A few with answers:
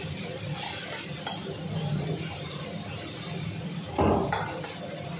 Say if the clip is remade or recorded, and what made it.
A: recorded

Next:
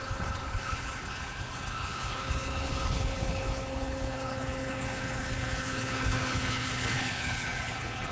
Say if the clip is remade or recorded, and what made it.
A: remade, codec, HILCodec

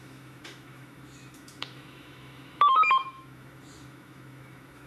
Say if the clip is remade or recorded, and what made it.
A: remade, autoencoder, DAC-VAE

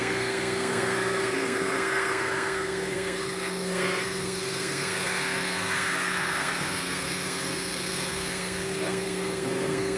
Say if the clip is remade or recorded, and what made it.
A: remade, codec, SNAC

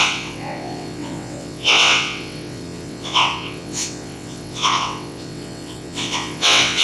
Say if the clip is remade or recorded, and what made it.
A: remade, vocoder, WaveNeXt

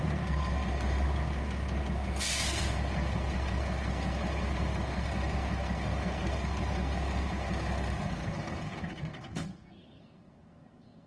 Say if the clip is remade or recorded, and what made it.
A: remade, codec, SNAC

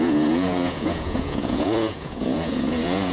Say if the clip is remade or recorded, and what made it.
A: remade, vocoder, Vocos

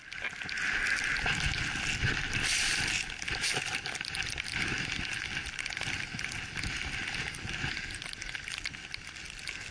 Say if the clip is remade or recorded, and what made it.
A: recorded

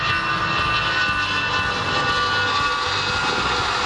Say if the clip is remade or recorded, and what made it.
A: recorded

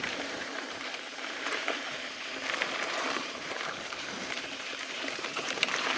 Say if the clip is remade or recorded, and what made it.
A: remade, vocoder, BigVGAN v2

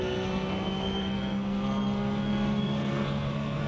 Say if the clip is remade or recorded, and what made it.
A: remade, codec, SNAC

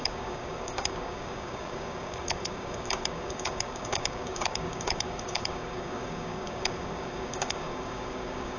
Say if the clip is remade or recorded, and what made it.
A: remade, codec, DAC